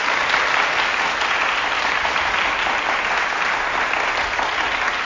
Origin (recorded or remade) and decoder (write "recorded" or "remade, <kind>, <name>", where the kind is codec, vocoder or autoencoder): recorded